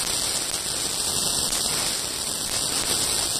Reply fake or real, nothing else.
real